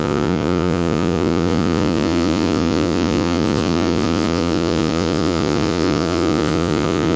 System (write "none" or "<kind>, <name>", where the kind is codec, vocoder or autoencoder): vocoder, Vocos